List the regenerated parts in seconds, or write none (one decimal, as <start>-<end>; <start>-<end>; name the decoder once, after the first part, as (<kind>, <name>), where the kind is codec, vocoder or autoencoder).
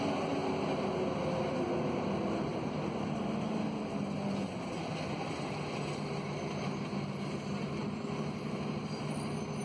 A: none